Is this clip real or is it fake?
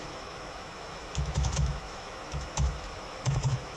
fake